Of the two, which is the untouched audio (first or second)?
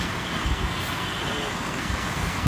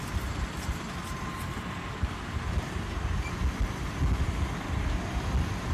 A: second